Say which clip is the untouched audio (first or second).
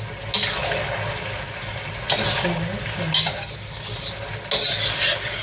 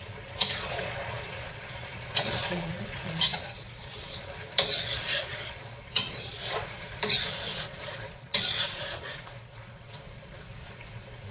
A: first